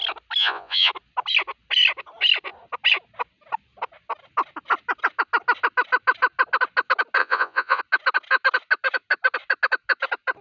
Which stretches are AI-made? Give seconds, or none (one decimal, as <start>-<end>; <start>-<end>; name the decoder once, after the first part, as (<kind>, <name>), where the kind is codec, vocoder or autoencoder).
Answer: 0.4-0.9 (vocoder, Vocos); 7.2-7.8